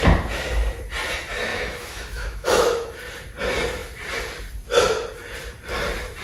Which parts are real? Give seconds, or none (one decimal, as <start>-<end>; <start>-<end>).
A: 0.0-1.5; 3.0-6.2

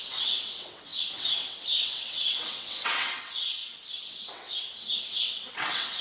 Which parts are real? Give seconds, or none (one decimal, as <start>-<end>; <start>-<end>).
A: 3.6-4.1

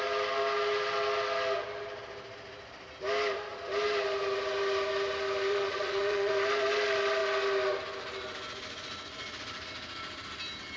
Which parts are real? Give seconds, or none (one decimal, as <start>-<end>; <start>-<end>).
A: 0.0-5.5; 6.3-10.8

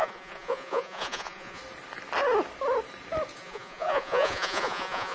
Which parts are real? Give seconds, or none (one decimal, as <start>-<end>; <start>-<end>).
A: 1.6-3.4

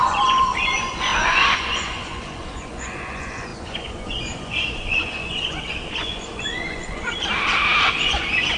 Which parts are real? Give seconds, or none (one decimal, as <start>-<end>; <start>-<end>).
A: 7.1-8.0

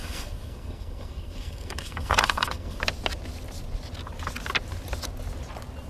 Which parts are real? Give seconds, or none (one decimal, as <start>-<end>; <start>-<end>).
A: 2.8-5.9

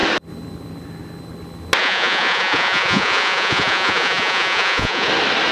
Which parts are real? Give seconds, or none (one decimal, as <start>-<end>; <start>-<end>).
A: 0.0-1.8; 5.1-5.5